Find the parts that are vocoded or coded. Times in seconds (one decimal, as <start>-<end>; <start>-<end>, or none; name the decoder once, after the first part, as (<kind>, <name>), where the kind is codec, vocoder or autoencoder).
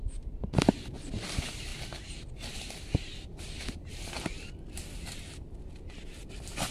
0.0-1.7 (vocoder, BigVGAN v2); 2.7-6.7